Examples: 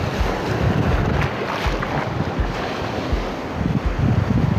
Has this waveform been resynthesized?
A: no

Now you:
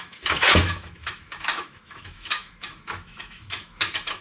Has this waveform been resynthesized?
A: yes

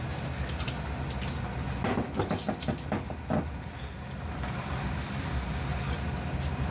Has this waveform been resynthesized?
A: no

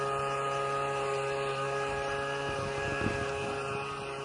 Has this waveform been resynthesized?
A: no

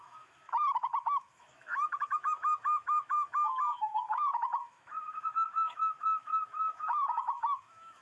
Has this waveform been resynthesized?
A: yes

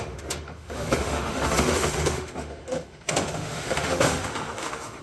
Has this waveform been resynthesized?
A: yes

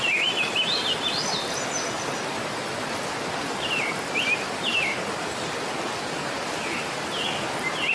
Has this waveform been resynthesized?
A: no